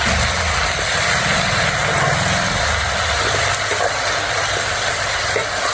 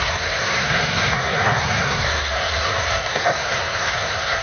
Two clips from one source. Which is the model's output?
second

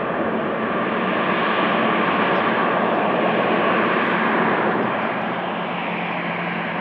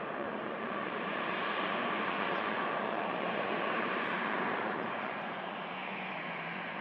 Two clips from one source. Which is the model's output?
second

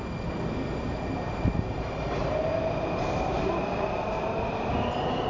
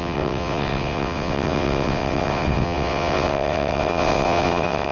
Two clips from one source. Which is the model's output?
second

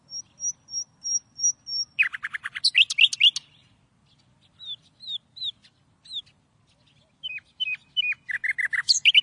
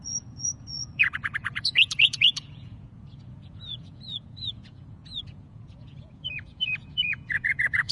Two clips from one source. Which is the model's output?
second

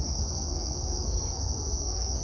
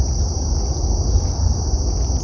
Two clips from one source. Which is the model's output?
first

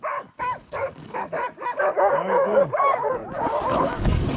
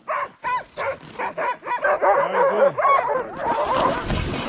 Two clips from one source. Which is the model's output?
first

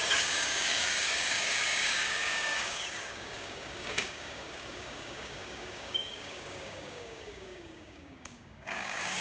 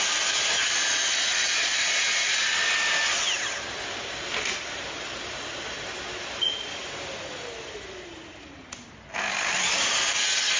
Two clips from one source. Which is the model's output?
first